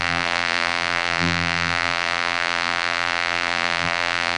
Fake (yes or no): yes